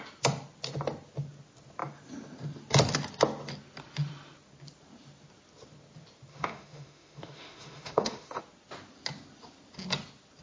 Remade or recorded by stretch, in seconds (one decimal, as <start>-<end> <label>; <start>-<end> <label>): 0.0-6.3 recorded; 6.3-8.4 remade; 8.4-10.4 recorded